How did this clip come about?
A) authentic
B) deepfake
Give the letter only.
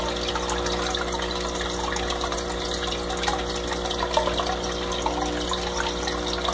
A